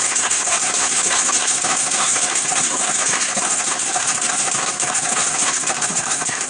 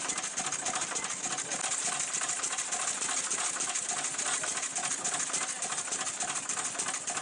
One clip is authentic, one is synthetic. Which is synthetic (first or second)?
first